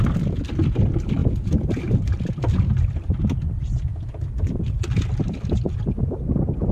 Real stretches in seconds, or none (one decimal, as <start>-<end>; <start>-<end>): 0.0-1.2; 1.8-6.7